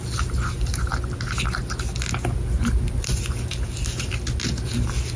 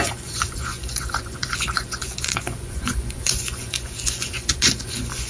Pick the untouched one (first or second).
first